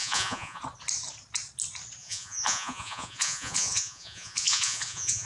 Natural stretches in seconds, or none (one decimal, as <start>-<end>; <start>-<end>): 0.6-2.0